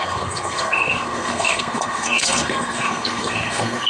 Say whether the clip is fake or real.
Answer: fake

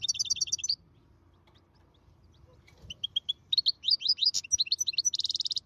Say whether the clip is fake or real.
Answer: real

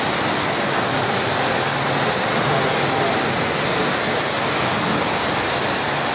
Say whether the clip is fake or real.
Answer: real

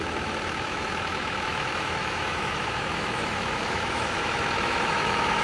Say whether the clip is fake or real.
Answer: fake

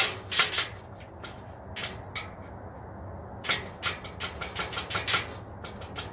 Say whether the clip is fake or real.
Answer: real